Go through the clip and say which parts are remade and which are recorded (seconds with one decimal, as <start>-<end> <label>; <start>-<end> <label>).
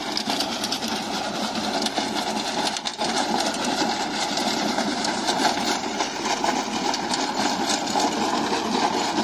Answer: 0.0-2.9 recorded; 2.9-6.4 remade; 6.4-9.2 recorded